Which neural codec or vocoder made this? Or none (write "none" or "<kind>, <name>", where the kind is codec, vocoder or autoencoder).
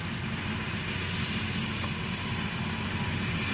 none